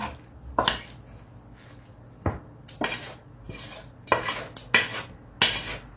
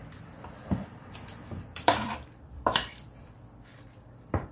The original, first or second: first